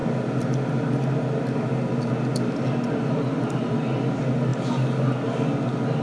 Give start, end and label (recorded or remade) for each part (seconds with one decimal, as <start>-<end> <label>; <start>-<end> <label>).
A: 0.0-6.0 recorded